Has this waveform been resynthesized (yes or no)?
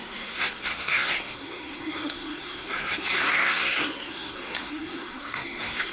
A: yes